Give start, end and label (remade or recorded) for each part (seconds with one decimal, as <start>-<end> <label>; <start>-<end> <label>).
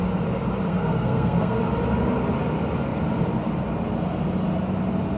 0.0-0.7 recorded; 0.7-1.6 remade; 1.6-5.2 recorded